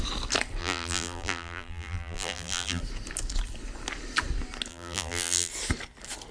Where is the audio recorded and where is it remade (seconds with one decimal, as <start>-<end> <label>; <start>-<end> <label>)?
0.0-0.6 recorded; 0.6-2.8 remade; 2.8-4.7 recorded; 4.7-5.5 remade; 5.5-6.3 recorded